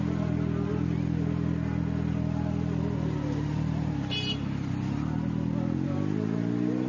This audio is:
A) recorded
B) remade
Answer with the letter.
A